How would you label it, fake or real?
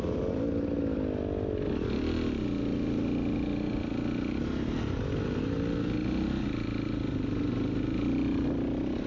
real